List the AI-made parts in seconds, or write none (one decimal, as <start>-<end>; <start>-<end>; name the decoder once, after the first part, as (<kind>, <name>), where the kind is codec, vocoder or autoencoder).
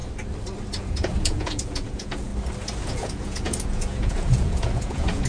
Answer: 0.8-2.3 (vocoder, Vocos); 2.9-5.3